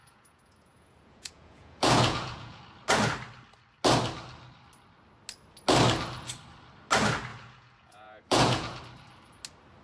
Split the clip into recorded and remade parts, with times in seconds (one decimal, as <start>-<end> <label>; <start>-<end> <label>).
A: 0.0-2.6 remade; 2.6-7.3 recorded; 7.3-8.8 remade; 8.8-9.8 recorded